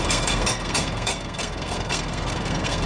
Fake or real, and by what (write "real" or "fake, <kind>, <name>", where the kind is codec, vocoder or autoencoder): fake, codec, SNAC